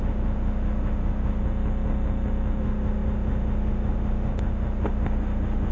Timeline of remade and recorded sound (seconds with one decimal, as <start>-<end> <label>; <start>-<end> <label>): 0.0-1.4 remade; 1.4-2.6 recorded; 2.6-5.7 remade